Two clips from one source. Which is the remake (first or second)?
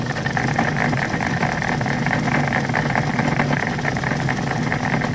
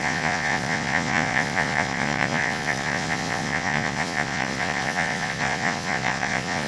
second